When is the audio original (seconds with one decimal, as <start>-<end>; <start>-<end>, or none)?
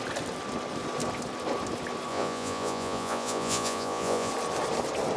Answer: 0.0-2.1; 4.3-5.2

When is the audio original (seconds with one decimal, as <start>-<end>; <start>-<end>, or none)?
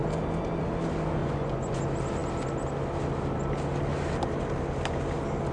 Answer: 0.0-1.2; 1.8-5.5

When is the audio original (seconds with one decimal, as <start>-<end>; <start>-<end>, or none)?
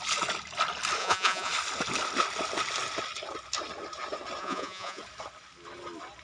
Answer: 0.0-1.0; 1.5-4.4; 5.0-6.2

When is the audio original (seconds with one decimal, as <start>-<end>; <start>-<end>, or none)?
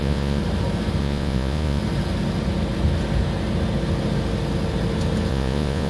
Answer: 0.4-1.0; 1.8-5.3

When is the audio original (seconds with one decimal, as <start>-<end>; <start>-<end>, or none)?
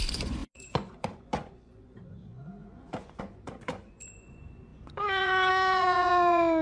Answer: none